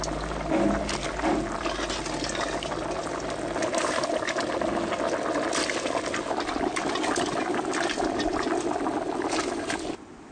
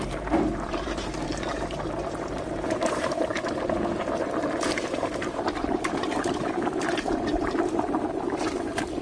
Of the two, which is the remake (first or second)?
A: second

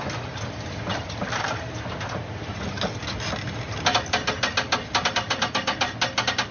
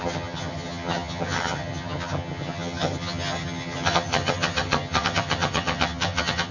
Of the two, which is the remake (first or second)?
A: second